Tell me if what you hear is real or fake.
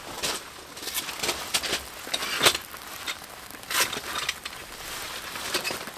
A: real